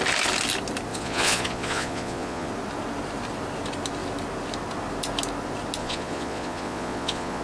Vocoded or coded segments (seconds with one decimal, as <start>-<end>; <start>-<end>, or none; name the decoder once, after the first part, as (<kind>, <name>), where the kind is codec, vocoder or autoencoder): 0.9-2.5 (vocoder, Vocos); 5.8-7.4